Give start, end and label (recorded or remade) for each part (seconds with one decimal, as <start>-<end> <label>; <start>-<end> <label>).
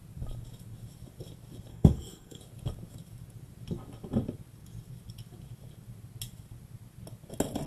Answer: 0.0-1.7 recorded; 1.7-2.4 remade; 2.4-7.7 recorded